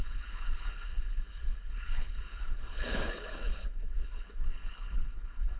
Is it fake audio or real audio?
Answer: fake